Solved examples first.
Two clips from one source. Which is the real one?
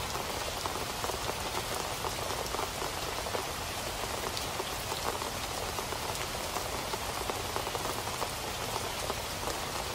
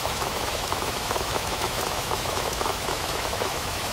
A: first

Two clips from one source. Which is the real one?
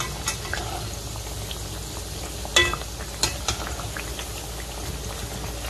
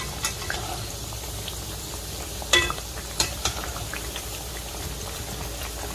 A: first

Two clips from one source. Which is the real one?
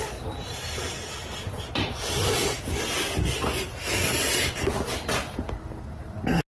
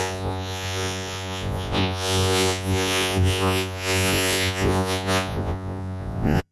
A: first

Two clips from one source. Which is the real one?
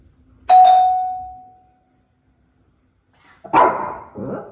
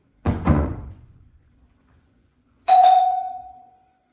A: first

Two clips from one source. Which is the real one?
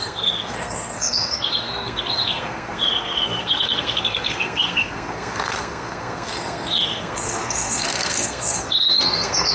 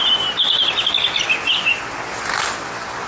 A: second